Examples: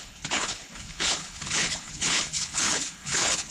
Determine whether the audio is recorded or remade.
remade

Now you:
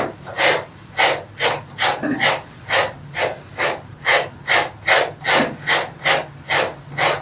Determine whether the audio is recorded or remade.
recorded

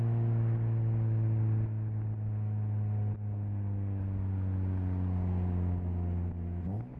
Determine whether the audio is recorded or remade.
recorded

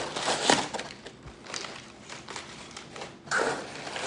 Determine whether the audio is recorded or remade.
recorded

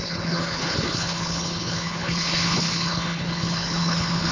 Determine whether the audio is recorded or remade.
remade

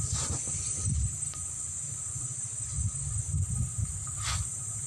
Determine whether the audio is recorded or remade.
recorded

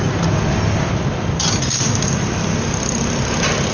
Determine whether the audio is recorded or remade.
recorded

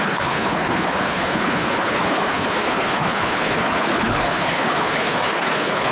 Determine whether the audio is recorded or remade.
remade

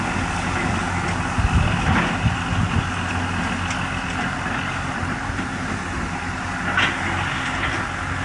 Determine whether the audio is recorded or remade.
recorded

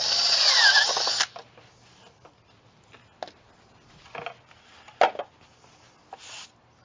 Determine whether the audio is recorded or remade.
recorded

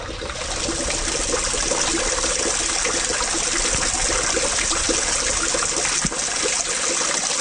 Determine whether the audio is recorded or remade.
recorded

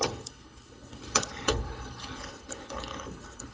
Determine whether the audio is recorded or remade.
remade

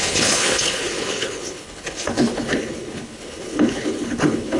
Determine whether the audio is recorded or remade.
remade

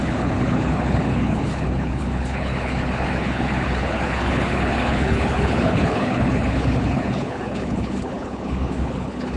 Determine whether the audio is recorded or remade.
remade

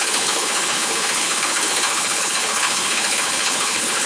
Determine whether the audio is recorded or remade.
remade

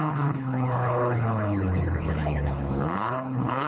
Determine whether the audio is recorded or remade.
remade